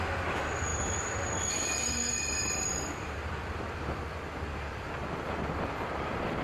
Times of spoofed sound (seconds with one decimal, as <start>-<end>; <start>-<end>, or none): 0.7-1.5; 2.4-6.4

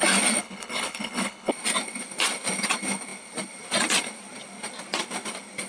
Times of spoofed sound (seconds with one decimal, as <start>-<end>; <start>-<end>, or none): 0.4-1.5

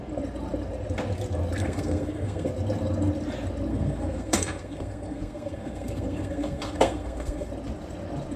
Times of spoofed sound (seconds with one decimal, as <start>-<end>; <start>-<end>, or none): 1.6-2.5; 3.7-7.5

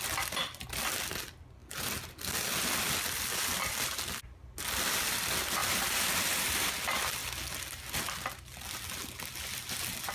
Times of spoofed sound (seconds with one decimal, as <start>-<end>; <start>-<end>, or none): 5.6-6.7

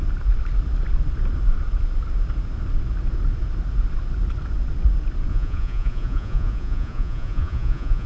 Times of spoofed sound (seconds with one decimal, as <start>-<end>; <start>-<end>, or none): 5.3-8.1

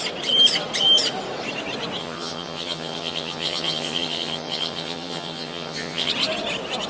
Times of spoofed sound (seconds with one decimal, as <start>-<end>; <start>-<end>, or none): 2.0-6.1

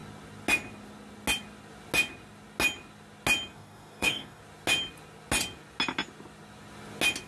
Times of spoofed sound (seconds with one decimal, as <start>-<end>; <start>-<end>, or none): 3.5-4.4

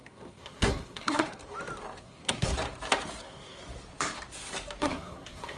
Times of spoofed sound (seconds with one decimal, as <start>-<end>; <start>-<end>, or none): 0.0-1.4; 2.0-2.5; 3.2-3.6; 4.8-5.6